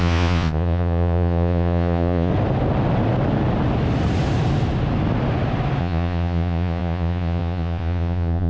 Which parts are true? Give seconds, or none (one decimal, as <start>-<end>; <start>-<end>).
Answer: 2.3-5.8